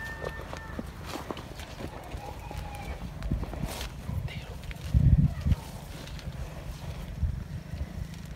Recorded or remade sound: recorded